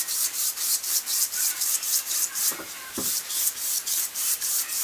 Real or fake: fake